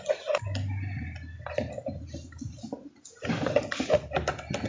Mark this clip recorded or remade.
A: recorded